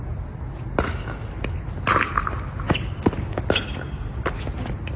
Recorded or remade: recorded